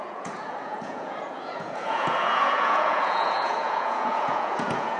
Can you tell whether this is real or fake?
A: fake